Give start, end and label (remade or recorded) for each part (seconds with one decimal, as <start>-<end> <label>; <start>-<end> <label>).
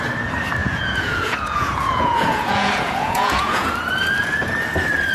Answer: 0.0-0.6 recorded; 0.6-3.7 remade; 3.7-5.1 recorded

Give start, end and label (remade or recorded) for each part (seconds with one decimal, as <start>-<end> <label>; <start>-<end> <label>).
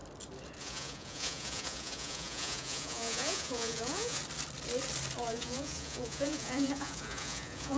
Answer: 0.0-0.6 recorded; 0.6-4.2 remade; 4.2-5.2 recorded; 5.2-7.8 remade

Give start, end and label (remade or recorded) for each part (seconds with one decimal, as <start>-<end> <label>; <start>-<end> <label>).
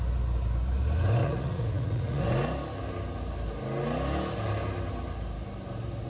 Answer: 0.0-1.2 recorded; 1.2-2.2 remade; 2.2-6.1 recorded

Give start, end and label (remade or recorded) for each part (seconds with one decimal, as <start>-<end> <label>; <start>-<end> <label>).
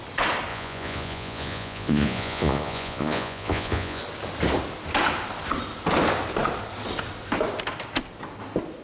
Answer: 0.0-0.5 recorded; 0.5-4.0 remade; 4.0-8.8 recorded